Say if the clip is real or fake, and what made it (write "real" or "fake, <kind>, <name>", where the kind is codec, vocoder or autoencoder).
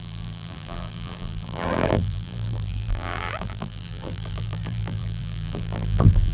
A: fake, vocoder, BigVGAN v2